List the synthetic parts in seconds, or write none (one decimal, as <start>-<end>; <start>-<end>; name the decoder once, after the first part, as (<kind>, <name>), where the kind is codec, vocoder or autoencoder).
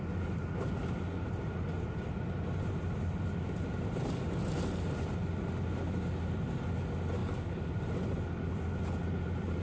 7.2-7.7 (codec, DAC)